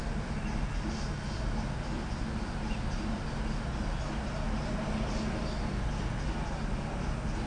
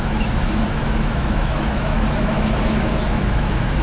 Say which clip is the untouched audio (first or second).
first